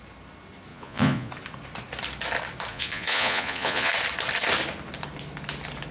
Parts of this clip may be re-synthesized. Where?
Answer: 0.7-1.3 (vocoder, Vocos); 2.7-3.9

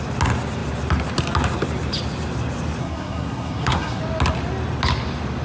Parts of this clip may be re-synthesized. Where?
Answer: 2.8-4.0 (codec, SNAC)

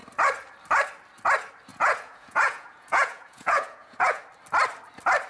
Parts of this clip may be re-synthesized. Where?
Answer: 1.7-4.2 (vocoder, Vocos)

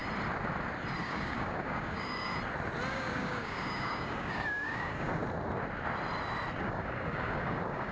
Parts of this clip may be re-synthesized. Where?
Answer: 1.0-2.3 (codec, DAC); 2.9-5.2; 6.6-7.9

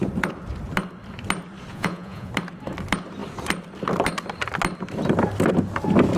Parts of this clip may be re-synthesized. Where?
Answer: 1.7-2.3 (vocoder, Vocos)

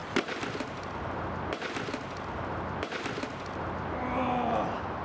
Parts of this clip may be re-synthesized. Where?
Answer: none

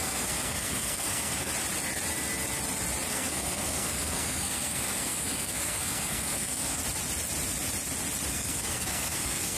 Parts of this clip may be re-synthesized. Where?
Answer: 0.0-1.5 (codec, SNAC); 3.1-6.8; 8.3-9.6